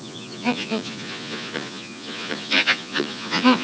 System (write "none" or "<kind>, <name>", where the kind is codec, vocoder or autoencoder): vocoder, Vocos